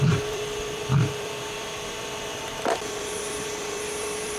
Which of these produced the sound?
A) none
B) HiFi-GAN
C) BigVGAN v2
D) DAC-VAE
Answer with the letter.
C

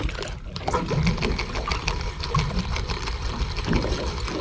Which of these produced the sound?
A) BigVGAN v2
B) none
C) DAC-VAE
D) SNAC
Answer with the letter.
B